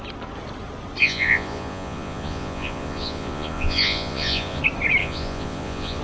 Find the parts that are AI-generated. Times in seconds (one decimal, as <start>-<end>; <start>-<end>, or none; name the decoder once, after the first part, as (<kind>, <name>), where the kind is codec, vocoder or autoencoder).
1.0-4.6 (vocoder, Vocos); 5.0-6.0